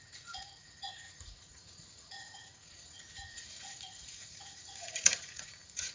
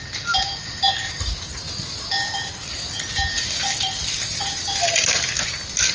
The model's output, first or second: first